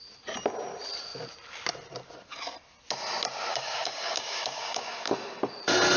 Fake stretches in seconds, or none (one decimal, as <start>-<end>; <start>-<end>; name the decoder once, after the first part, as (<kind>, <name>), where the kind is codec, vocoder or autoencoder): 3.5-5.1 (codec, DAC)